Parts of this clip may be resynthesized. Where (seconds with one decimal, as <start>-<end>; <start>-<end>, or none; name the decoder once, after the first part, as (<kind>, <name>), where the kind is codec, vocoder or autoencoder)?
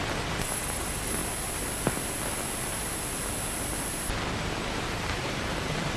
0.0-1.2 (vocoder, BigVGAN v2); 4.8-6.0